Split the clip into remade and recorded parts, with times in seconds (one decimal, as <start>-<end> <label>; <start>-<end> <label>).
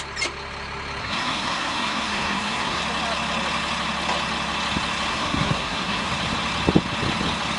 0.0-1.0 recorded; 1.0-2.8 remade; 2.8-5.1 recorded; 5.1-6.1 remade; 6.1-7.6 recorded